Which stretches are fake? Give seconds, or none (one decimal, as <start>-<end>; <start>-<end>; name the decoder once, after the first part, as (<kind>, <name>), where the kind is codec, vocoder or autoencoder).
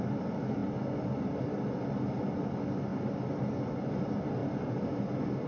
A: 4.4-5.5 (vocoder, BigVGAN v2)